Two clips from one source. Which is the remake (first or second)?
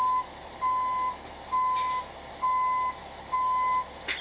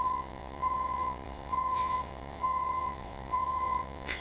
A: second